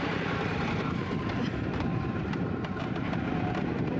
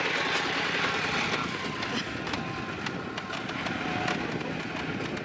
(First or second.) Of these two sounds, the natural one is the second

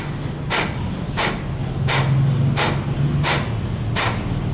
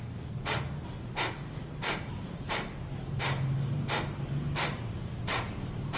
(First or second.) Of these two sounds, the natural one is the first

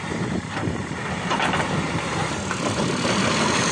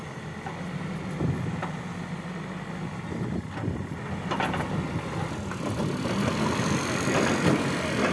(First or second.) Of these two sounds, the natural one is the second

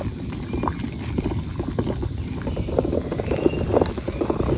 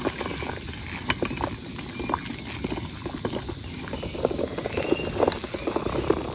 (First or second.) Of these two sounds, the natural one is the second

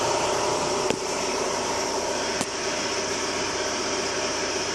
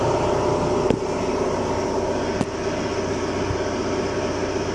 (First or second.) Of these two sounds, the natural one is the second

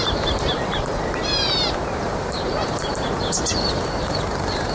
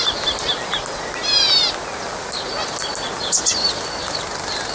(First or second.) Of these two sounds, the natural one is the second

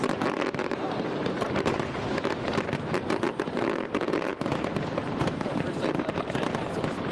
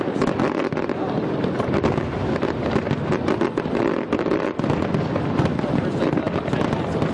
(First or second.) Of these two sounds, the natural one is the second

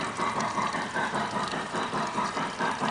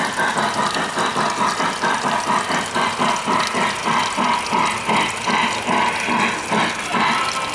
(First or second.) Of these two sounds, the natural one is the second